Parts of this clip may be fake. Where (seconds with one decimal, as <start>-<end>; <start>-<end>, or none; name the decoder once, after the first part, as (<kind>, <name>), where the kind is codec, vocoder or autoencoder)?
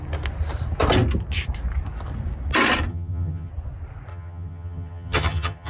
2.9-3.5 (vocoder, HiFi-GAN); 4.1-5.7